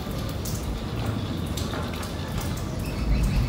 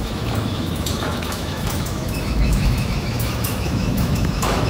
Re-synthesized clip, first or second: second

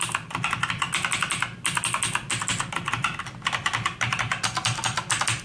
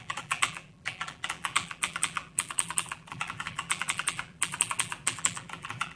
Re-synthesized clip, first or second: second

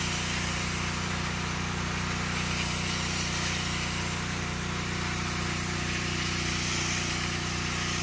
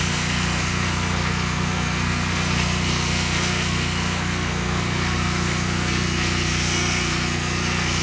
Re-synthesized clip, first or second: second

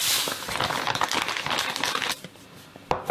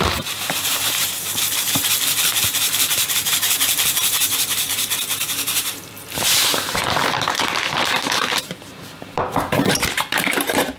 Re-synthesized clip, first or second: second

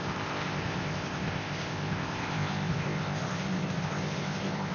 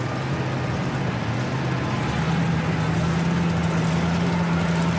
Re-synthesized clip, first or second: first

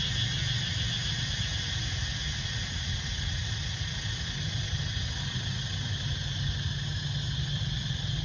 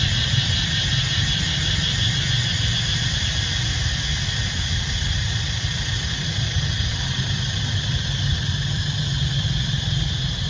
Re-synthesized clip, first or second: second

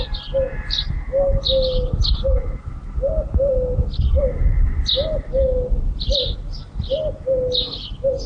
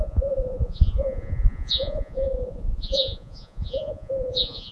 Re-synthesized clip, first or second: second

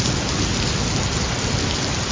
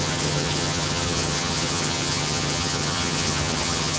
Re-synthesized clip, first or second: second